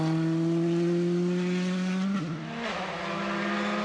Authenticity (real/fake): real